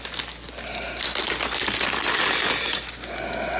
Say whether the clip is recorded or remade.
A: recorded